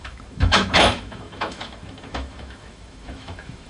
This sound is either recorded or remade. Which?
remade